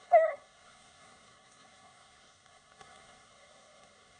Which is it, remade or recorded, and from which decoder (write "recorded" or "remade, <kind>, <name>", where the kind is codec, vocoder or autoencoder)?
remade, codec, SNAC